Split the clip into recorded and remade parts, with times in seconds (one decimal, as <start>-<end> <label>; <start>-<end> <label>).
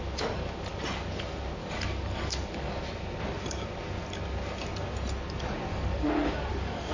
0.0-1.6 recorded; 1.6-2.7 remade; 2.7-5.7 recorded; 5.7-6.9 remade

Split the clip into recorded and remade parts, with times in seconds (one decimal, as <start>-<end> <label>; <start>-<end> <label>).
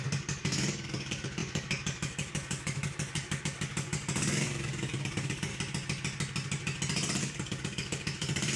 0.0-5.5 remade; 5.5-7.2 recorded; 7.2-8.6 remade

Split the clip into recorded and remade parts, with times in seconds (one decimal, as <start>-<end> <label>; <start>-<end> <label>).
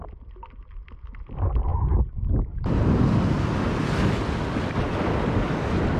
0.0-6.0 recorded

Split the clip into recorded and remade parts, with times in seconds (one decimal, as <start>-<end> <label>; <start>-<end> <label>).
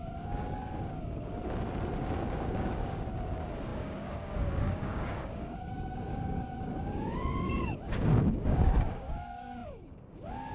0.0-1.4 remade; 1.4-2.2 recorded; 2.2-10.5 remade